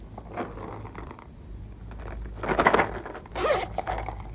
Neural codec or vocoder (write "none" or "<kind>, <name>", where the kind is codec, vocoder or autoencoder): none